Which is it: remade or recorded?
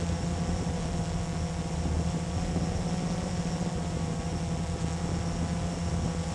recorded